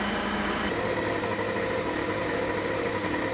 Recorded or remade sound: recorded